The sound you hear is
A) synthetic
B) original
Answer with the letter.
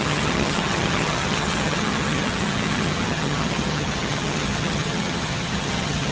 A